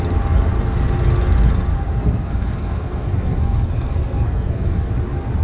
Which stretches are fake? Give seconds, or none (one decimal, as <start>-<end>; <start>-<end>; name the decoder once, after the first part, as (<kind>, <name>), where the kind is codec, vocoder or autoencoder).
1.7-4.9 (codec, SNAC)